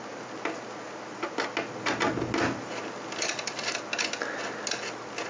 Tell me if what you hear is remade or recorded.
recorded